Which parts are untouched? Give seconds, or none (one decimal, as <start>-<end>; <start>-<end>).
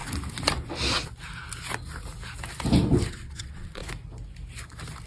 0.0-3.1; 3.8-5.1